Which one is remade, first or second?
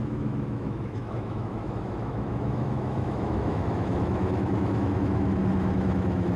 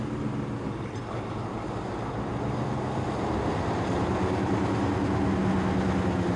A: first